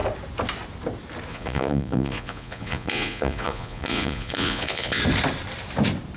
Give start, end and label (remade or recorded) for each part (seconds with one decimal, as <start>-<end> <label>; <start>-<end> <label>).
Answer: 0.0-1.3 recorded; 1.3-5.0 remade; 5.0-6.2 recorded

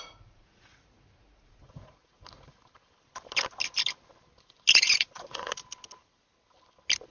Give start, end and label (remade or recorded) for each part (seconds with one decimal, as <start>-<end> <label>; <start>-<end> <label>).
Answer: 0.0-2.6 remade; 2.6-4.7 recorded; 4.7-5.5 remade; 5.5-7.1 recorded

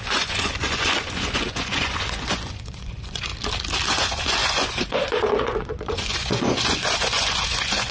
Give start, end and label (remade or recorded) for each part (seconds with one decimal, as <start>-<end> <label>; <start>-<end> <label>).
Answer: 0.0-3.3 remade; 3.3-3.9 recorded; 3.9-7.9 remade

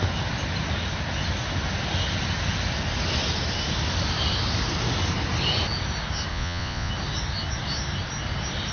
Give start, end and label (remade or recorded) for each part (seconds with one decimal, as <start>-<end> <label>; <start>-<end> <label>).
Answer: 0.0-6.3 recorded; 6.3-6.9 remade; 6.9-8.7 recorded

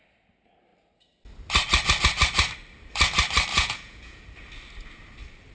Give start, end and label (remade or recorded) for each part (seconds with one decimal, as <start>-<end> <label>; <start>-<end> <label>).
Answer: 0.0-3.5 recorded; 3.5-4.2 remade; 4.2-5.5 recorded

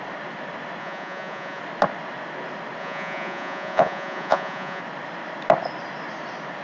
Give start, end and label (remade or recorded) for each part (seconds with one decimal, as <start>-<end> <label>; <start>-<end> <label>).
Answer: 0.0-0.8 recorded; 0.8-1.6 remade; 1.6-2.8 recorded; 2.8-4.8 remade; 4.8-6.6 recorded